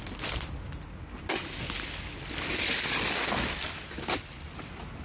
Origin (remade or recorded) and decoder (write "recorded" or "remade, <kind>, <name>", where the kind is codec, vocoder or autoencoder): recorded